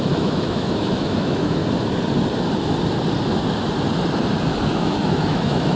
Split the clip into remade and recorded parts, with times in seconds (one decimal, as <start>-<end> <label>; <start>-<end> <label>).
0.0-1.6 remade; 1.6-4.7 recorded; 4.7-5.8 remade